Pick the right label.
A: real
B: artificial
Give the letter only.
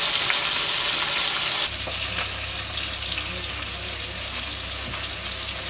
A